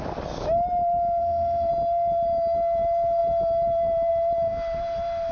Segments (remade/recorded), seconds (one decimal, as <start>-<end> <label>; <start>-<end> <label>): 0.0-1.2 recorded; 1.2-1.7 remade; 1.7-5.3 recorded